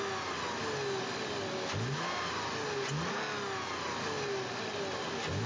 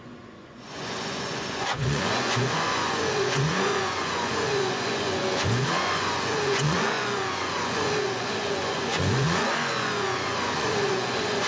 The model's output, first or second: second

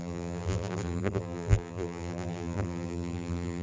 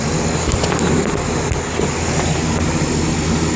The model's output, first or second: first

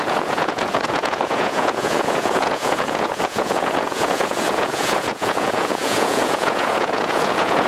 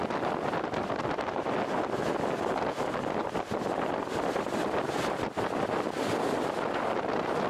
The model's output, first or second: first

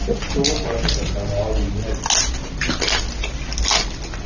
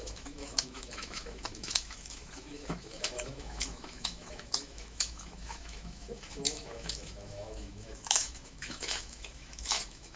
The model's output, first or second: second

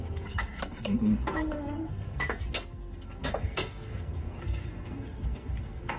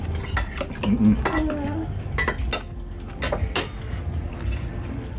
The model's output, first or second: first